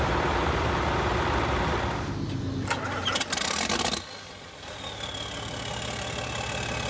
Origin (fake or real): real